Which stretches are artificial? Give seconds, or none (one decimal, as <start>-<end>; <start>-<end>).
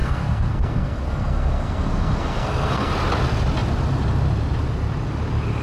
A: 0.0-2.9